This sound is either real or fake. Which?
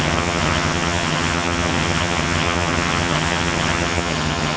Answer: fake